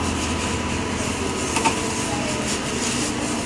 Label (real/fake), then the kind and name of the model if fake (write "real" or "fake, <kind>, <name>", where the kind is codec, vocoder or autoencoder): real